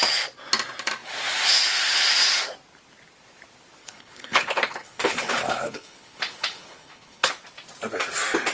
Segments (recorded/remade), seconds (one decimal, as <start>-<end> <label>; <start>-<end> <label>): 0.0-3.8 recorded; 3.8-7.3 remade; 7.3-8.5 recorded